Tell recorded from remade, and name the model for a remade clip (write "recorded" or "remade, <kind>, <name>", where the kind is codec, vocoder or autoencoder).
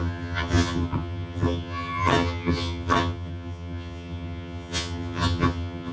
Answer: remade, vocoder, HiFi-GAN